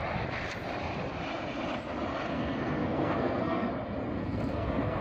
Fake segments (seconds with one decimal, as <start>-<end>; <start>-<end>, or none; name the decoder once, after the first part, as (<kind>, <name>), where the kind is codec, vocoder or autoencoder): 2.1-3.7 (codec, SNAC); 4.2-5.0